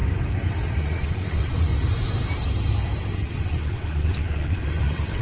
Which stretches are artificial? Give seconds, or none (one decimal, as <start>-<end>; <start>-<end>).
0.8-1.7; 3.1-5.2